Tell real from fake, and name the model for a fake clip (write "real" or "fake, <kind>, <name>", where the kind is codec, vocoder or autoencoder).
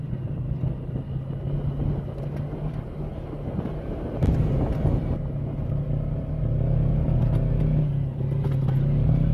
real